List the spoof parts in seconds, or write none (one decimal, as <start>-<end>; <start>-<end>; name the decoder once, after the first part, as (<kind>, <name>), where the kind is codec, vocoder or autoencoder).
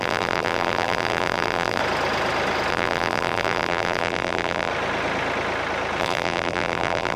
0.0-1.8 (vocoder, BigVGAN v2); 2.7-4.7; 6.0-7.2